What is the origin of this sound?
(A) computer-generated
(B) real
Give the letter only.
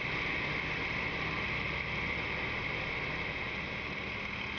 B